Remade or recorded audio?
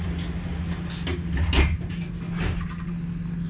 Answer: recorded